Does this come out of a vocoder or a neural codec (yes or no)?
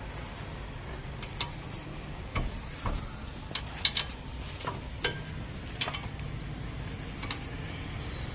no